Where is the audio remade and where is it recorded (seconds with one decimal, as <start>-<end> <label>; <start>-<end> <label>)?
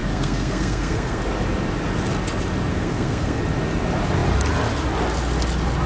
0.0-1.2 remade; 1.2-2.7 recorded; 2.7-3.4 remade; 3.4-5.9 recorded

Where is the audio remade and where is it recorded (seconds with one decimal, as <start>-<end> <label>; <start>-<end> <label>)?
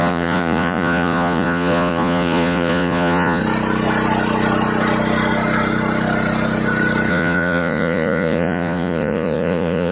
0.0-3.4 remade; 3.4-7.1 recorded; 7.1-9.9 remade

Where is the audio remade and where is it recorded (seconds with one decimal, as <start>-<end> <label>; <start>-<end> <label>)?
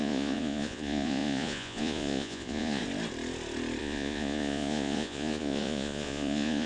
0.0-2.8 remade; 2.8-3.8 recorded; 3.8-6.7 remade